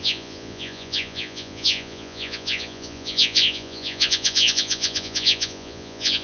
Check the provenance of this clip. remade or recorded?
remade